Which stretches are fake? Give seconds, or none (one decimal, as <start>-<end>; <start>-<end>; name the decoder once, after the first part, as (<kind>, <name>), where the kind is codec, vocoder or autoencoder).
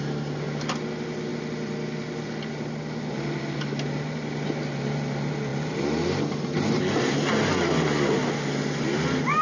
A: none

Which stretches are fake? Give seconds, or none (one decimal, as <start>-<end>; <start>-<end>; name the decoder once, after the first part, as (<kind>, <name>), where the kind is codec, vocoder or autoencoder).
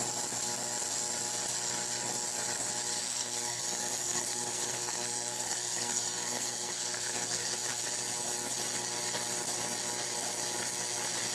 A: 3.0-3.6 (codec, SNAC); 4.0-7.8